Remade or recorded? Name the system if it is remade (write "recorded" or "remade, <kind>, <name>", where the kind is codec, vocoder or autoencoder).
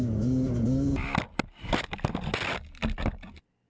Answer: recorded